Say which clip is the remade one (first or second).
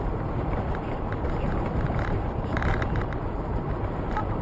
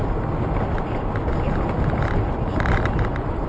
first